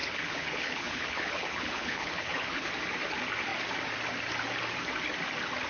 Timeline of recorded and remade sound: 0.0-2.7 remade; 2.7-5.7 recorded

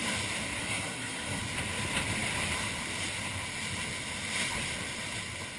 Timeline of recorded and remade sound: 0.0-0.6 recorded; 0.6-1.4 remade; 1.4-5.6 recorded

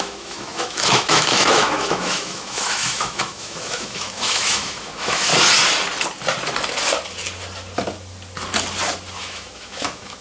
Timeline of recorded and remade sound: 0.0-5.3 remade; 5.3-9.2 recorded; 9.2-10.2 remade

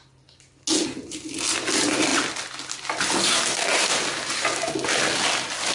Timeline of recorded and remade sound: 0.0-5.7 recorded

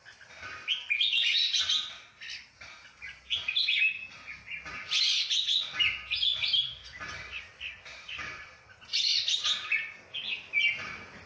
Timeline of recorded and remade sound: 0.0-7.9 recorded; 7.9-8.8 remade; 8.8-11.3 recorded

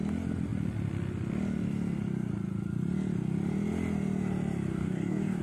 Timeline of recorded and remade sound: 0.0-4.7 recorded; 4.7-5.4 remade

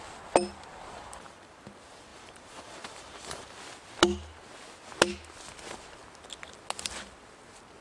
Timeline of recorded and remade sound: 0.0-0.7 recorded; 0.7-1.6 remade; 1.6-2.1 recorded; 2.1-3.6 remade; 3.6-7.8 recorded